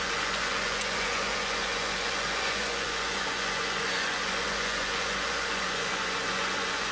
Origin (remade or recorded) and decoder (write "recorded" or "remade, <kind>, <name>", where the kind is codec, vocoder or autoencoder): remade, vocoder, Vocos